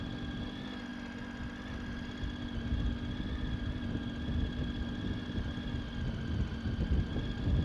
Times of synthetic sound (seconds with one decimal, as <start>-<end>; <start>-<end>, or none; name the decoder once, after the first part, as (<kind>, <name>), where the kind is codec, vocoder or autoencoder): none